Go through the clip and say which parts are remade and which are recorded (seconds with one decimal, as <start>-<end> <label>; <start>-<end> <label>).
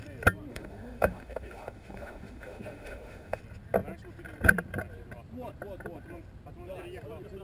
0.0-0.5 recorded; 0.5-3.4 remade; 3.4-7.4 recorded